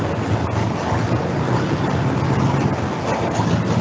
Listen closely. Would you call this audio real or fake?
real